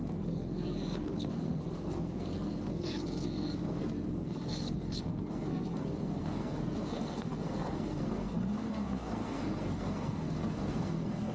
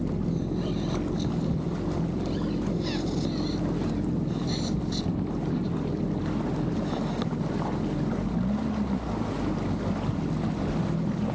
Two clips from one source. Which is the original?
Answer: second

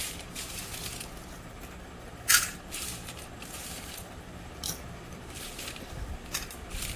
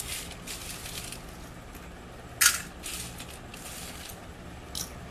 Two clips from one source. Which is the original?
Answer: second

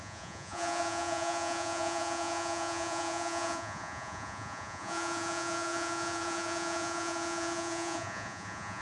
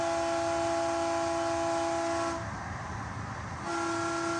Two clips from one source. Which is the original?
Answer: second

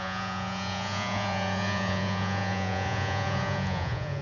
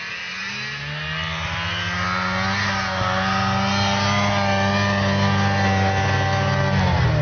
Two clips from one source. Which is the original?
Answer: second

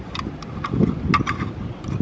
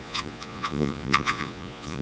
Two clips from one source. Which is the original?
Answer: first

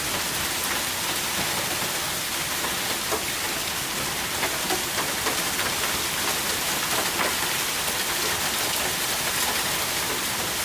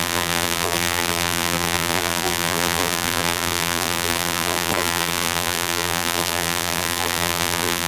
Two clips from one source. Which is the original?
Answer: first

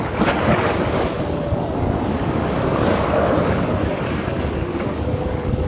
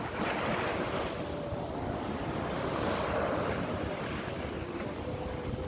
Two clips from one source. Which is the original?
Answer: second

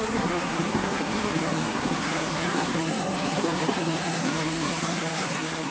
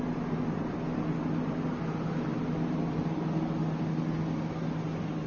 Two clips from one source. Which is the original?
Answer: second